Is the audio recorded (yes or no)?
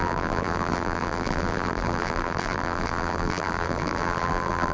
no